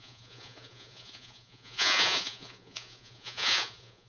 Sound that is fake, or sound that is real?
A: fake